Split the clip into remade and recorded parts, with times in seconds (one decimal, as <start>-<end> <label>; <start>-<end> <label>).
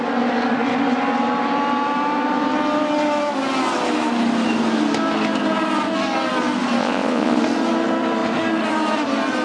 0.0-6.8 recorded; 6.8-7.4 remade; 7.4-9.4 recorded